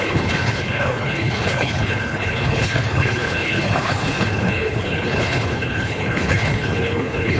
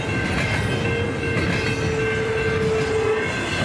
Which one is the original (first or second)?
second